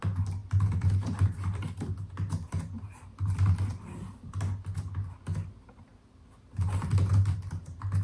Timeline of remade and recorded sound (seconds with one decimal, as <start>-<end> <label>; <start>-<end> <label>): 0.0-8.0 recorded